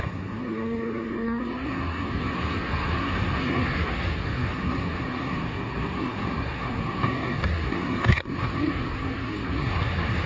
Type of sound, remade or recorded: remade